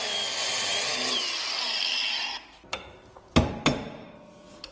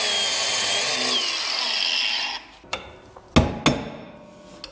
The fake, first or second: first